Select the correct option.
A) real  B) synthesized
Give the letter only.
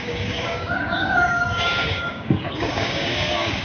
B